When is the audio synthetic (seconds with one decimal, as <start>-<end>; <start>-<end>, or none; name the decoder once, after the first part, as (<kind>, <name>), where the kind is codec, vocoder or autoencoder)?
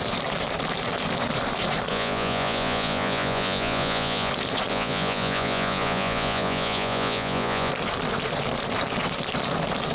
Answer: 1.9-4.3 (vocoder, Vocos); 4.7-7.7